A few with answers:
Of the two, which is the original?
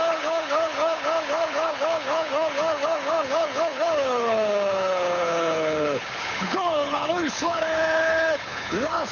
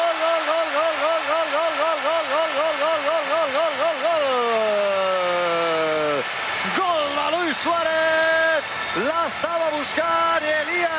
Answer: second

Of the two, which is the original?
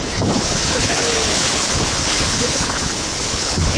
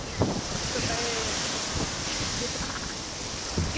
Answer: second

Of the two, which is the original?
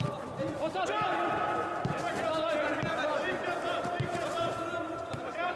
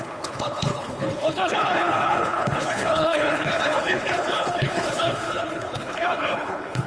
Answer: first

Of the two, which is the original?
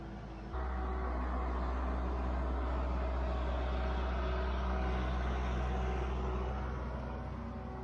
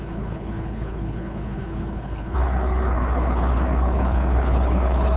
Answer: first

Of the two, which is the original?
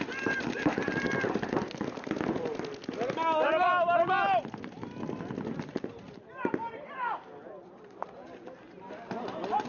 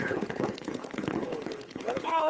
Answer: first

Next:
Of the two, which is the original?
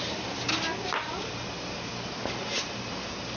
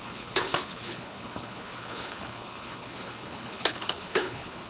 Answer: first